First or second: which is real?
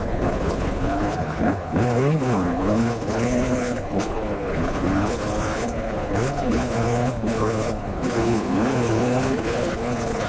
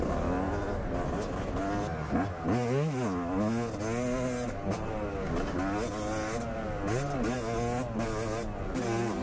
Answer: second